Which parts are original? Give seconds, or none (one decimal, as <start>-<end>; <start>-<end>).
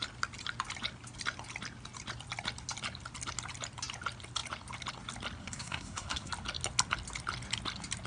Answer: 0.0-5.4; 6.3-8.1